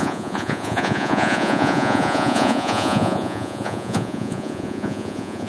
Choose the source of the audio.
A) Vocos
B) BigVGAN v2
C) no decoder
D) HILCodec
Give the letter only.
A